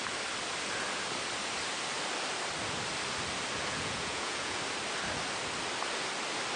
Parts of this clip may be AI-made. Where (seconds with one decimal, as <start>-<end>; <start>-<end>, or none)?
3.7-4.6

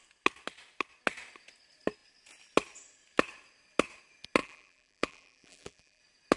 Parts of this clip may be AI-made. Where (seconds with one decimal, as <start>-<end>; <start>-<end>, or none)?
4.4-6.0